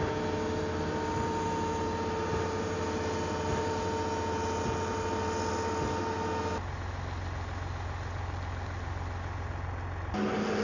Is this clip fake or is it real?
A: real